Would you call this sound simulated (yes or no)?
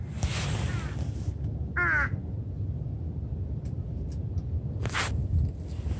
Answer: no